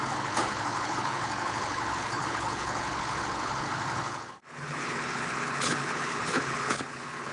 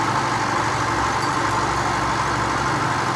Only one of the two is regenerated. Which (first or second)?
first